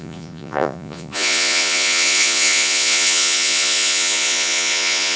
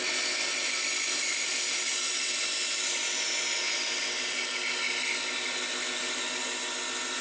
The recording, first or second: second